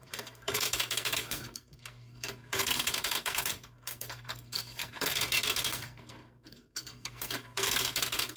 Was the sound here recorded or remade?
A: remade